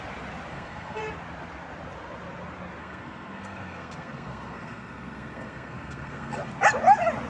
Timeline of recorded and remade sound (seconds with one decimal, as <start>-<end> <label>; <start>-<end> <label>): 0.0-0.5 recorded; 0.5-1.0 remade; 1.0-2.8 recorded; 2.8-6.5 remade; 6.5-7.3 recorded